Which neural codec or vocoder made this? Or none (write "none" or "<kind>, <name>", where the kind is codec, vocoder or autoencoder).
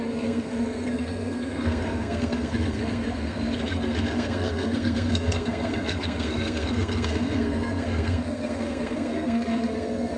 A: codec, SNAC